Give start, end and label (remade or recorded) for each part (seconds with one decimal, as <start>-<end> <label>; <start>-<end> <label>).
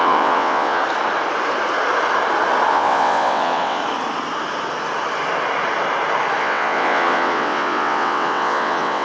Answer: 0.0-0.8 remade; 0.8-2.7 recorded; 2.7-3.8 remade; 3.8-6.4 recorded; 6.4-9.0 remade